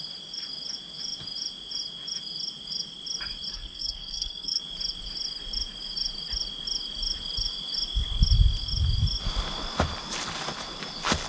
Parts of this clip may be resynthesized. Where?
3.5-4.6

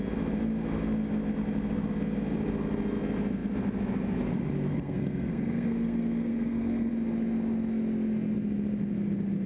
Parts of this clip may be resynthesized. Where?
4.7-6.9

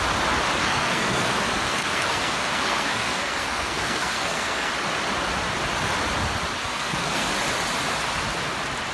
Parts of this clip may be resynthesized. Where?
0.6-4.7; 6.6-7.3